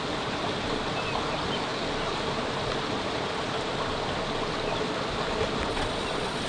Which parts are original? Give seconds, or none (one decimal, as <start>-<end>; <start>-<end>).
0.0-5.7